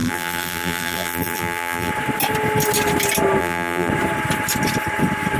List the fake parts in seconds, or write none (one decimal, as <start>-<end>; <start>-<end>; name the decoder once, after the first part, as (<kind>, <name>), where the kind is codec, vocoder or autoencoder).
0.0-1.9 (vocoder, BigVGAN v2); 3.4-3.9